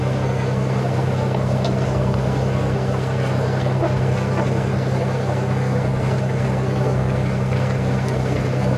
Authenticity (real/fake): fake